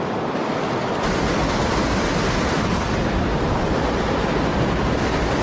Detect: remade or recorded recorded